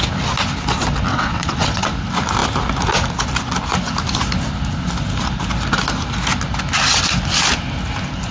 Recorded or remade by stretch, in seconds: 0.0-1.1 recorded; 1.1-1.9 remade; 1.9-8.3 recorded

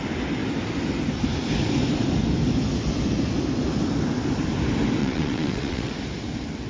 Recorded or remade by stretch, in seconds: 0.0-5.0 recorded; 5.0-5.9 remade; 5.9-6.7 recorded

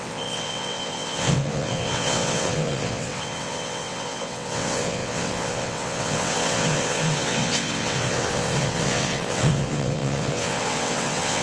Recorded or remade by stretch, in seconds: 0.0-11.4 remade

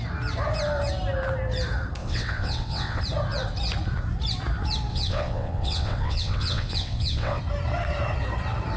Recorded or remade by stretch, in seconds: 0.0-2.0 recorded; 2.0-3.0 remade; 3.0-4.9 recorded; 4.9-7.4 remade; 7.4-8.8 recorded

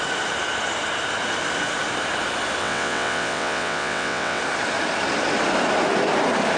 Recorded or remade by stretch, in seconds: 0.0-2.6 recorded; 2.6-4.4 remade; 4.4-6.6 recorded

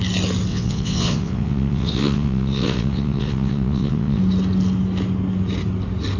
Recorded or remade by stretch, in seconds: 0.0-0.5 recorded; 0.5-4.2 remade; 4.2-6.2 recorded

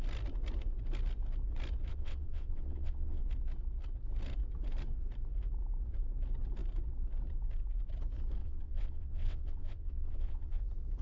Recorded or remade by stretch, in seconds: 0.0-1.9 recorded; 1.9-3.2 remade; 3.2-8.4 recorded; 8.4-10.6 remade; 10.6-11.0 recorded